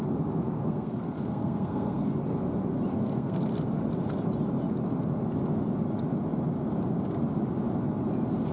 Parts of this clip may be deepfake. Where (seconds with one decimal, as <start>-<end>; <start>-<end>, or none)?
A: 0.6-2.1; 2.9-3.5